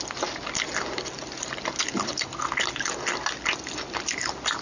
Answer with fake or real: real